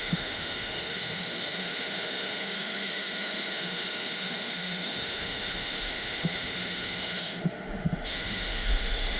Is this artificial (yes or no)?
yes